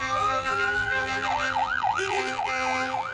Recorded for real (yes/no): no